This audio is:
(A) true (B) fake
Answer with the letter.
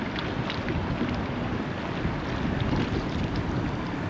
A